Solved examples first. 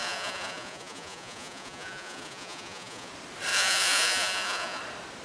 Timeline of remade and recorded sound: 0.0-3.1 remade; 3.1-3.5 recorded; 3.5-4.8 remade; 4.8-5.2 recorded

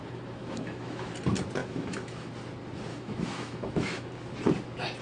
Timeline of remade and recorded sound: 0.0-0.4 recorded; 0.4-1.1 remade; 1.1-1.6 recorded; 1.6-2.3 remade; 2.3-2.9 recorded; 2.9-4.1 remade; 4.1-5.0 recorded

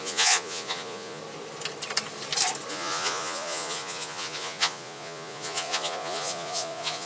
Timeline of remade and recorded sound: 0.0-1.2 remade; 1.2-2.7 recorded; 2.7-7.1 remade

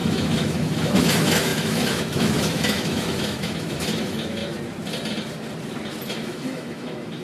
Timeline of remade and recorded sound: 0.0-4.4 remade; 4.4-6.1 recorded; 6.1-7.2 remade